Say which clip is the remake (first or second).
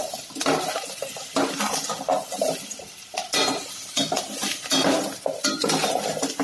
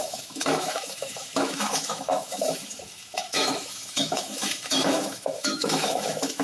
second